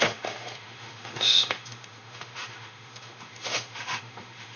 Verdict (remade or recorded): remade